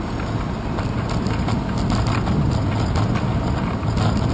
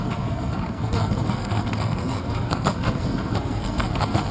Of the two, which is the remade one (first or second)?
second